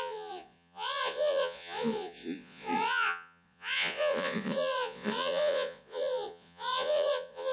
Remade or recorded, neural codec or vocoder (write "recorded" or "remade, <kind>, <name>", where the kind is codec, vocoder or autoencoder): remade, vocoder, Vocos